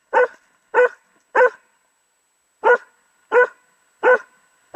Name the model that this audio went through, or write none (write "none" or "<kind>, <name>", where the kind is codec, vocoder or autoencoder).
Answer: none